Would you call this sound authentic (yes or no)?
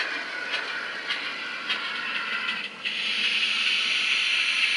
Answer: yes